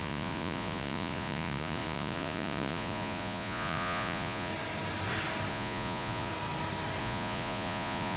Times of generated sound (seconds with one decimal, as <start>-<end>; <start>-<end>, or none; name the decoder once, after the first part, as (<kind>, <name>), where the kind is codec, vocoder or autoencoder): 0.0-4.5 (vocoder, Vocos); 5.5-6.3; 7.0-8.2

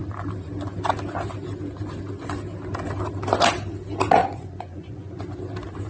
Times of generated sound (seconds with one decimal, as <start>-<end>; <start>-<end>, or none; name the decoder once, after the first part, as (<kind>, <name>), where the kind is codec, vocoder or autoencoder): 4.2-5.2 (vocoder, Vocos)